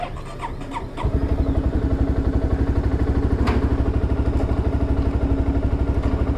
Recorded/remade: recorded